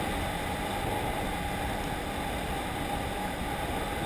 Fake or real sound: real